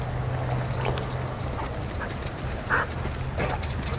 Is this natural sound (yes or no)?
yes